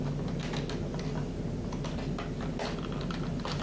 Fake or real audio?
real